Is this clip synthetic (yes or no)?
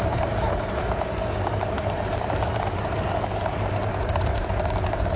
yes